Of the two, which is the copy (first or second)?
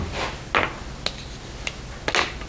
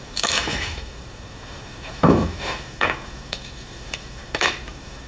second